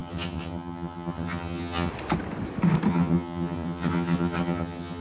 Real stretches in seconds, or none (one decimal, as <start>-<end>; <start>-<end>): 1.9-2.9